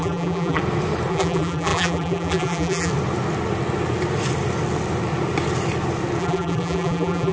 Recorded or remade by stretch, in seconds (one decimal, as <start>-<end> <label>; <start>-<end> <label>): 0.0-0.6 remade; 0.6-1.1 recorded; 1.1-2.9 remade; 2.9-6.2 recorded; 6.2-7.3 remade